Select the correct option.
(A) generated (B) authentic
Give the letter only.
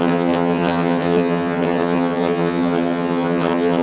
A